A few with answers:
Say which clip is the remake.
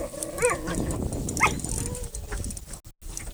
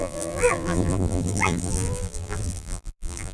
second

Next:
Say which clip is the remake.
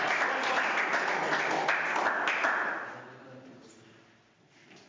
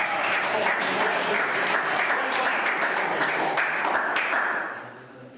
second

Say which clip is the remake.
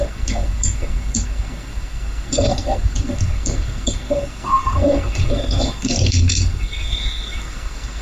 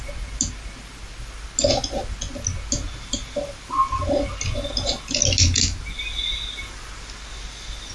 first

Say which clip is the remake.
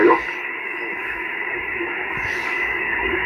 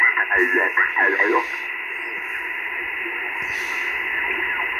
first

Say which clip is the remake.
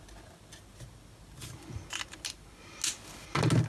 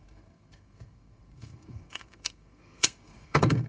second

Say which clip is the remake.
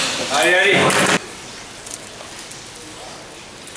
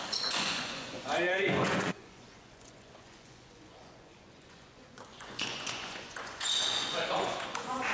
second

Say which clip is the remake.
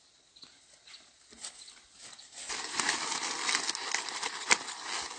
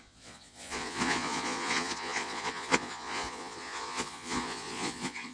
second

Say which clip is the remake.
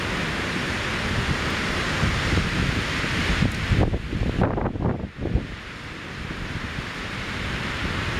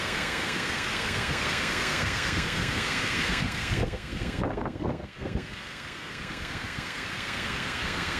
second